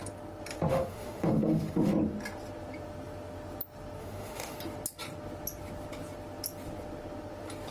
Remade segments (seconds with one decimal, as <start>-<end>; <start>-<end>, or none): 0.7-1.9; 4.0-4.6